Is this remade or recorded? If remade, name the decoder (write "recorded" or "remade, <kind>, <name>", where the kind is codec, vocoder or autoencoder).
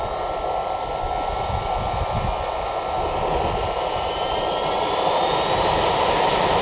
recorded